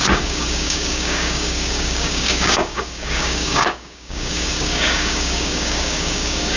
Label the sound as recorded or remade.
remade